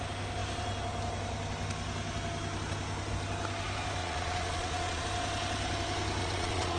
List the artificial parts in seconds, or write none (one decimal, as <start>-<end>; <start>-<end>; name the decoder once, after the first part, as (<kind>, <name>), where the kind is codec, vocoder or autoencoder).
4.0-5.0 (vocoder, Vocos); 6.2-6.8